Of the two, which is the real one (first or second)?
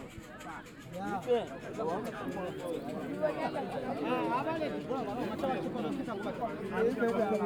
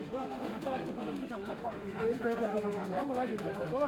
first